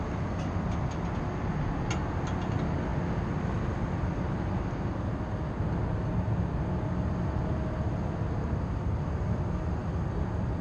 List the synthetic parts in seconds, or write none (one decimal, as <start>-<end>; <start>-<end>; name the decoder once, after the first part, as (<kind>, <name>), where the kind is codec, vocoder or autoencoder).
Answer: 9.8-10.6 (vocoder, BigVGAN v2)